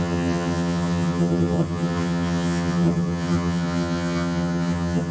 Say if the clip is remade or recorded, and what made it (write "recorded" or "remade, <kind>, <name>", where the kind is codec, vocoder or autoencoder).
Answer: remade, vocoder, HiFi-GAN